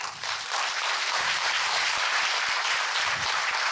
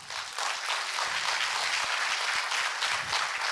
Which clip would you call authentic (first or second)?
second